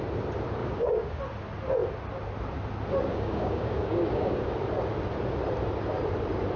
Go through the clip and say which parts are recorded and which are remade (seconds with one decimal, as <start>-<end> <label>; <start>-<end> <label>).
0.0-0.6 recorded; 0.6-1.2 remade; 1.2-3.1 recorded; 3.1-4.5 remade; 4.5-6.6 recorded